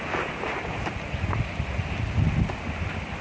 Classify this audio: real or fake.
real